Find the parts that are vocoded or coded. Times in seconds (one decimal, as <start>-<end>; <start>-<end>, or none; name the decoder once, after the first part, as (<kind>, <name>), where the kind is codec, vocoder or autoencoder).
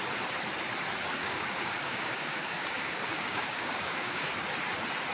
1.2-4.3 (codec, DAC)